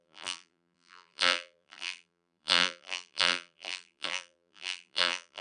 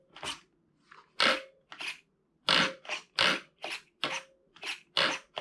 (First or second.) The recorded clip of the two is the second